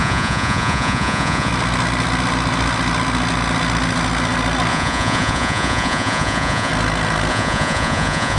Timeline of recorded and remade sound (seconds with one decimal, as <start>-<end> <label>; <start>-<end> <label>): 0.0-1.5 remade; 1.5-4.7 recorded; 4.7-6.7 remade; 6.7-7.3 recorded; 7.3-8.4 remade